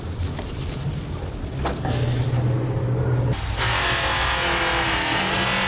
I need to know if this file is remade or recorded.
recorded